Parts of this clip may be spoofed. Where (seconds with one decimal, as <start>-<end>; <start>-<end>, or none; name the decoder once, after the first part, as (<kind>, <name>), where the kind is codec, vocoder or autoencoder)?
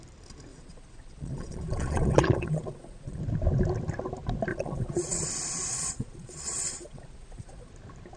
0.5-3.2 (vocoder, Vocos); 4.5-5.3; 5.7-7.7